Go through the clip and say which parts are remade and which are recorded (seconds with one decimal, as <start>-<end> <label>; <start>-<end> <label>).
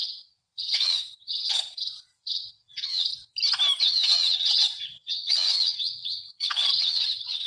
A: 0.0-3.1 remade; 3.1-3.8 recorded; 3.8-7.5 remade